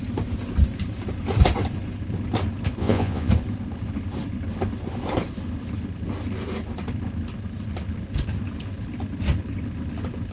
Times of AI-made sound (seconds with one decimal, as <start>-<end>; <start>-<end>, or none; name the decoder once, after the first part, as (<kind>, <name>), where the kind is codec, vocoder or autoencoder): 2.8-3.3 (vocoder, Vocos)